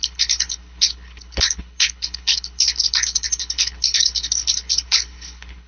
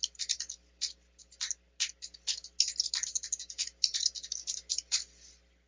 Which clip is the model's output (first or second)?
first